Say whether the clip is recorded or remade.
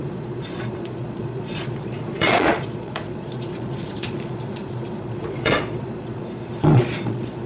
remade